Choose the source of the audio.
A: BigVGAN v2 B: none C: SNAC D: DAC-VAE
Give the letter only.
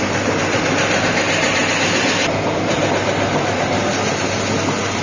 B